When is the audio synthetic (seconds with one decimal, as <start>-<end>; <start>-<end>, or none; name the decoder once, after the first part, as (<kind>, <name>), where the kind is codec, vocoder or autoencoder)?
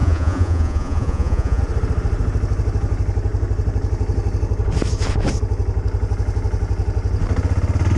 0.0-1.6 (vocoder, Vocos)